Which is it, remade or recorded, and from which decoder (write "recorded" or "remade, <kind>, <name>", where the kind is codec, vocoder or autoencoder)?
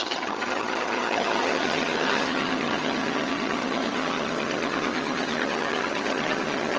remade, vocoder, HiFi-GAN